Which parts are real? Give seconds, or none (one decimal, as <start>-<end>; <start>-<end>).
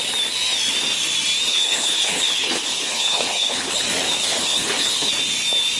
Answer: 0.0-1.5; 3.8-4.2; 5.1-5.8